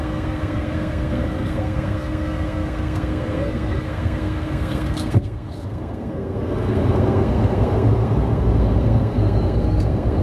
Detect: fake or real fake